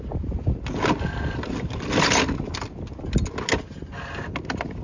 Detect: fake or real real